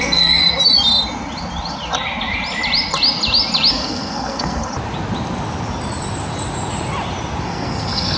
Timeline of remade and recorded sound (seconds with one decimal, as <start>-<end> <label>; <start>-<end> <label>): 0.0-0.4 remade; 0.4-3.7 recorded; 3.7-4.6 remade; 4.6-7.4 recorded; 7.4-8.2 remade